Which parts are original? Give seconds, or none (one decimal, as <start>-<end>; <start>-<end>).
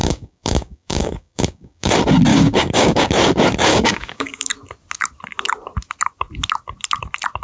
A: 1.9-2.3; 3.1-3.7; 4.5-7.4